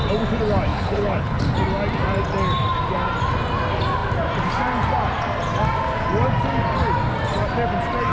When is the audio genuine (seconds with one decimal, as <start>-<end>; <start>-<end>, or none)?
0.0-0.7; 1.4-8.1

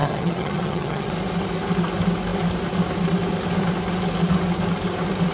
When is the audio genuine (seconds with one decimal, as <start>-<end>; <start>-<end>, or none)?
1.1-5.3

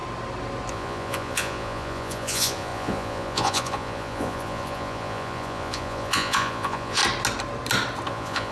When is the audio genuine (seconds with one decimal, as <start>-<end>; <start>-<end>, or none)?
0.0-0.7; 7.0-8.1

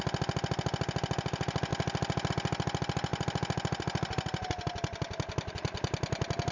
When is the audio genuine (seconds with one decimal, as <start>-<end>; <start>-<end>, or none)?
0.0-6.5

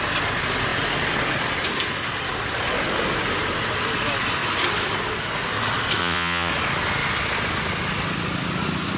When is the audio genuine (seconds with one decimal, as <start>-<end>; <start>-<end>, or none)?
0.0-6.0; 6.5-9.0

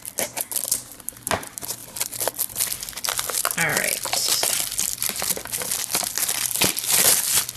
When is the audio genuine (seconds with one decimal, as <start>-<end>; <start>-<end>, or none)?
0.0-1.8; 2.4-7.6

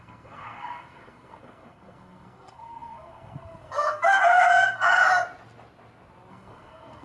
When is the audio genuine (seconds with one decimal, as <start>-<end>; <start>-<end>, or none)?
5.0-6.3

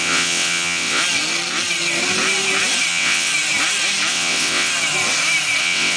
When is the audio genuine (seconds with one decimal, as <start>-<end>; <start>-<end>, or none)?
1.0-2.9; 3.3-4.1; 4.7-5.6